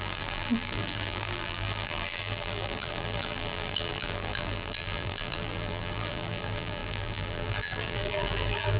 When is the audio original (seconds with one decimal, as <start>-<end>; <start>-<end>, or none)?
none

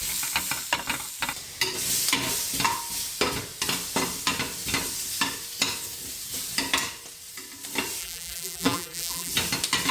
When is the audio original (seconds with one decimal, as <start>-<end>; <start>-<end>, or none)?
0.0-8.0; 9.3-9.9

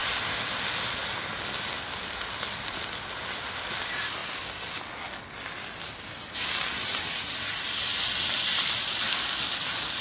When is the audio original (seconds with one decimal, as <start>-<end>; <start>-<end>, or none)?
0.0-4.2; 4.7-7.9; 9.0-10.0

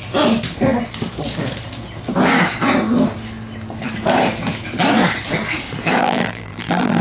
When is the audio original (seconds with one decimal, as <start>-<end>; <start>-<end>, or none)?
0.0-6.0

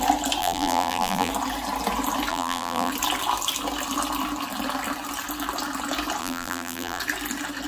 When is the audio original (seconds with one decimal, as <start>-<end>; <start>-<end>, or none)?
0.0-0.4; 1.3-2.3; 2.9-6.2; 7.0-7.7